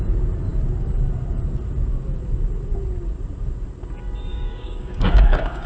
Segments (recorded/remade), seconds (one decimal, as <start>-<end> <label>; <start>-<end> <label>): 0.0-4.3 recorded; 4.3-5.7 remade

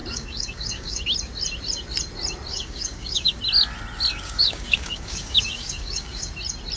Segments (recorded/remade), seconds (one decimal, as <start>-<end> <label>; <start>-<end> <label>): 0.0-1.0 remade; 1.0-2.5 recorded; 2.5-3.4 remade; 3.4-4.1 recorded; 4.1-6.3 remade; 6.3-6.8 recorded

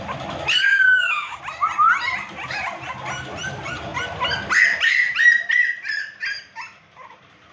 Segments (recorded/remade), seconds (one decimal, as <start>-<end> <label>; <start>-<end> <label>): 0.0-0.7 recorded; 0.7-1.4 remade; 1.4-7.5 recorded

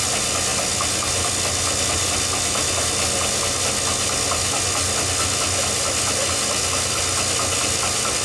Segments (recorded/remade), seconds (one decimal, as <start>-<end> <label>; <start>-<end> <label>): 0.0-8.2 recorded

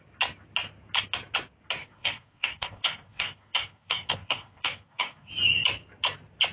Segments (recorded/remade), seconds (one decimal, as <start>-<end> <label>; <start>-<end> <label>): 0.0-1.8 recorded; 1.8-5.3 remade; 5.3-6.5 recorded

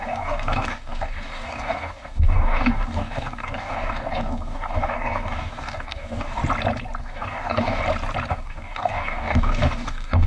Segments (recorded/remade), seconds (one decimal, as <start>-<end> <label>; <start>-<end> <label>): 0.0-6.4 remade; 6.4-7.0 recorded; 7.0-7.8 remade; 7.8-8.3 recorded; 8.3-10.3 remade

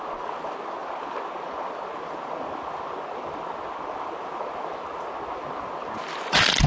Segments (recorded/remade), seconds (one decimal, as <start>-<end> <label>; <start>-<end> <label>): 0.0-6.7 recorded